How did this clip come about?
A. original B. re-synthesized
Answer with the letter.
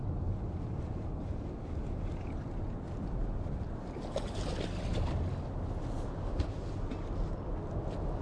A